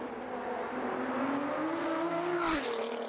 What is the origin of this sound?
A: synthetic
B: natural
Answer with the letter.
B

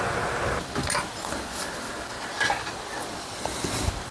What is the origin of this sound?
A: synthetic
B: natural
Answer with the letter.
B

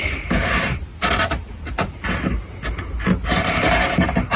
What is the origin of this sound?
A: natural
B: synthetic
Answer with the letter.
A